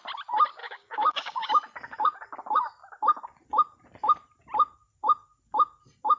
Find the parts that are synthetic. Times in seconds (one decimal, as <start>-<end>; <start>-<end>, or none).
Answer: 0.6-1.5